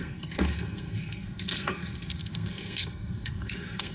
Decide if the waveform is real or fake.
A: fake